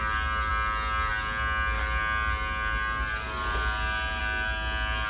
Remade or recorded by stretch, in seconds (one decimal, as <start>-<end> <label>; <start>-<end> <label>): 0.0-5.1 recorded